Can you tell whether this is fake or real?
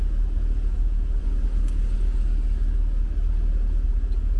real